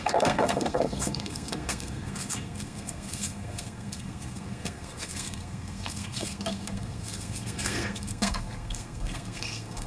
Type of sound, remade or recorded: remade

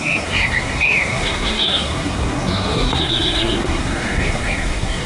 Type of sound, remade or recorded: remade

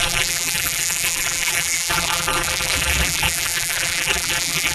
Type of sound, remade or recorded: remade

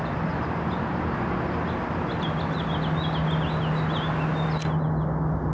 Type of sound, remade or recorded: recorded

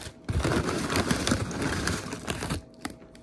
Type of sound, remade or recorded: recorded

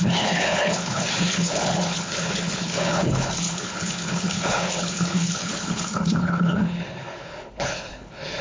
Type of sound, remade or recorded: remade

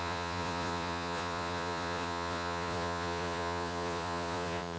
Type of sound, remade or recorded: remade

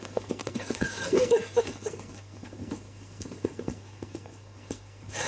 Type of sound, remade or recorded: remade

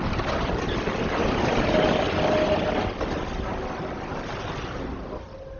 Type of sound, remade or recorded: recorded